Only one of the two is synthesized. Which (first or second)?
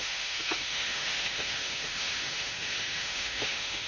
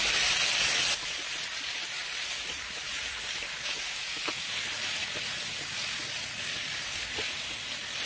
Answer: first